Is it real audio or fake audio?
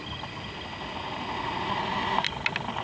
real